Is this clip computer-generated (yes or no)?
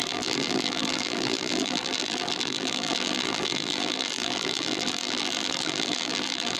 yes